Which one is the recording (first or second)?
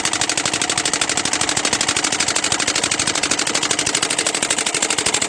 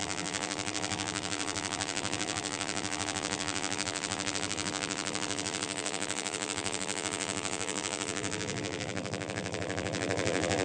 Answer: first